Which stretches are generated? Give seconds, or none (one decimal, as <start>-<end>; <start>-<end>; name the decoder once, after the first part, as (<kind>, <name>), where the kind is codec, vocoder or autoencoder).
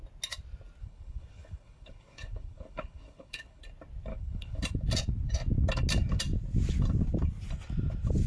0.8-3.6 (codec, HILCodec); 4.1-4.6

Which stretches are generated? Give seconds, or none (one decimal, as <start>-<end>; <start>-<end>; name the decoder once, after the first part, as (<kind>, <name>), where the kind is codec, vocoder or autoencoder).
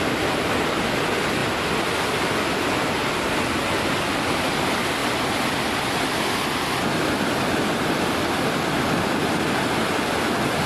none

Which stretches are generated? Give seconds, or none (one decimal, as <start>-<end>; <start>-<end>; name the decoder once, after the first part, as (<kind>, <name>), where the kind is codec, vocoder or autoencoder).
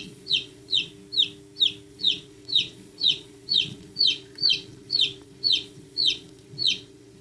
0.0-0.9 (vocoder, Vocos); 1.9-7.2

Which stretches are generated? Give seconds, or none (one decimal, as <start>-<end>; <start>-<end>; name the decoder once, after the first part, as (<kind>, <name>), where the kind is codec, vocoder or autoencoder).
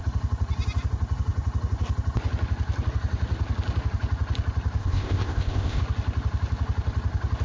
4.8-5.8 (codec, ZipCodec)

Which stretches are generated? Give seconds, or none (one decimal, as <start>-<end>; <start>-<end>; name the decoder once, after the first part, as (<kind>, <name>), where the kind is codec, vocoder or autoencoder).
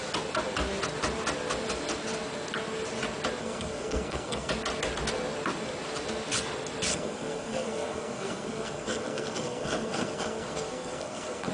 3.4-4.5 (codec, SNAC); 6.9-11.5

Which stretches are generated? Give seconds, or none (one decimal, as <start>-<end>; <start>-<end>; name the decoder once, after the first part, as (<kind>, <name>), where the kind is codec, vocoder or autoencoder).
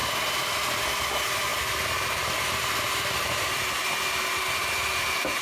0.0-5.4 (vocoder, BigVGAN v2)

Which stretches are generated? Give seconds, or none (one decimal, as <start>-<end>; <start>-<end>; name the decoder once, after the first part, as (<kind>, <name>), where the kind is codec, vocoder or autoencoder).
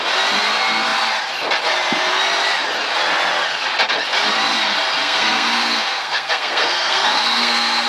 5.0-7.9 (codec, SNAC)